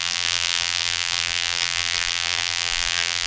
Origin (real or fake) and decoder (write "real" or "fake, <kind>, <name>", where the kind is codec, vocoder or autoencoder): fake, vocoder, BigVGAN v2